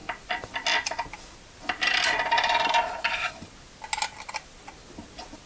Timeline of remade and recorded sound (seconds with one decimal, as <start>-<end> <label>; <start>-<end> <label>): 0.0-5.5 recorded